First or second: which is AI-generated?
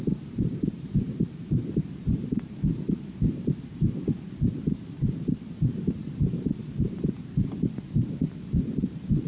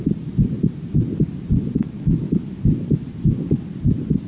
first